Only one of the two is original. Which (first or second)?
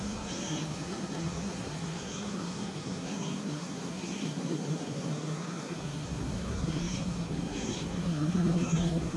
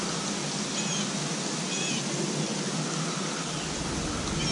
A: second